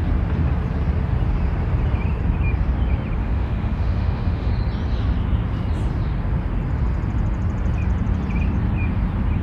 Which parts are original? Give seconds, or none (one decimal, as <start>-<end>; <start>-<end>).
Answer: 0.0-3.2; 4.5-9.4